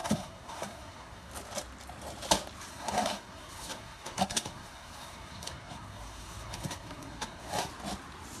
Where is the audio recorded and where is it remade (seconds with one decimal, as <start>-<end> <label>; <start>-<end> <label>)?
0.0-1.3 remade; 1.3-2.7 recorded; 2.7-7.7 remade; 7.7-8.4 recorded